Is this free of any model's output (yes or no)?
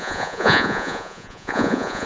no